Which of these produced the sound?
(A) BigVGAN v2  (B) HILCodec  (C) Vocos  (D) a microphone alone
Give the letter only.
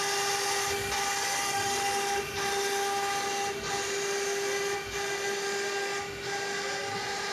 D